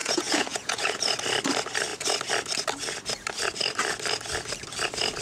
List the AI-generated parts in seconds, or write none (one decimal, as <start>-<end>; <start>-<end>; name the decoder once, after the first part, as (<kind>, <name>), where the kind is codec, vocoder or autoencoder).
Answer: 0.0-1.0 (vocoder, Vocos)